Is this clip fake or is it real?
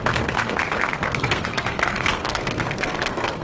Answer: fake